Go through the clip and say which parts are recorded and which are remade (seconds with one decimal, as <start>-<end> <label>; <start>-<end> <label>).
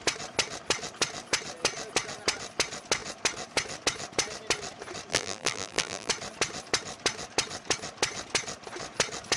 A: 0.0-5.1 recorded; 5.1-6.1 remade; 6.1-9.4 recorded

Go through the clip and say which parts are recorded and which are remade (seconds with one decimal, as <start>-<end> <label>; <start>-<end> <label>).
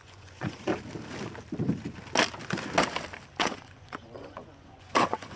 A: 0.0-0.7 remade; 0.7-3.4 recorded; 3.4-5.4 remade